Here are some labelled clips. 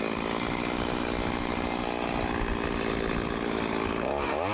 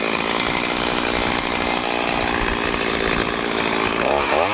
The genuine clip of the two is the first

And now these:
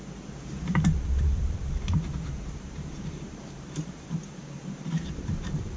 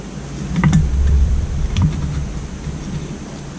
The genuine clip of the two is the second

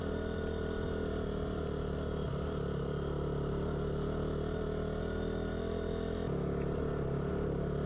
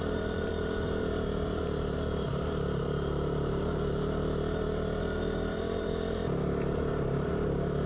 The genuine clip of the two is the first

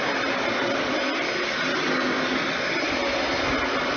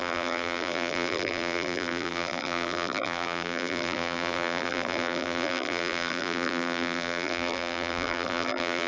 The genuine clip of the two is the first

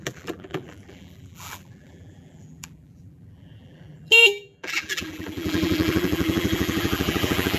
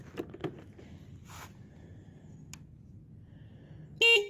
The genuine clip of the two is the second